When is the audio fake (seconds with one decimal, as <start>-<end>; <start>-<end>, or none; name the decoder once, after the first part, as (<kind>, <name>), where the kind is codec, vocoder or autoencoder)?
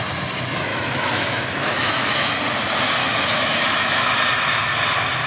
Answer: 0.7-2.4 (autoencoder, DAC-VAE); 3.0-4.1